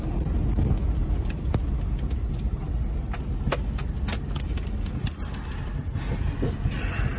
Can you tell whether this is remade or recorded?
recorded